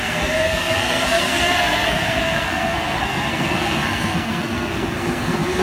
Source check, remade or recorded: remade